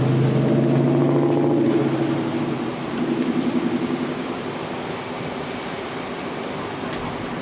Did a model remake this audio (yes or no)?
no